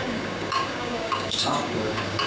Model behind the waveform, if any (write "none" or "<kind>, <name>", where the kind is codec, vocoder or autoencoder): codec, DAC